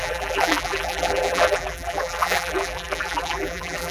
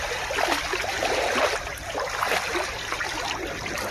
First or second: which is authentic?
second